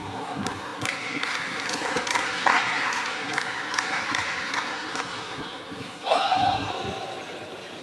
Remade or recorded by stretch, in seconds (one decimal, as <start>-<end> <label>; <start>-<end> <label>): 0.0-6.7 remade; 6.7-7.8 recorded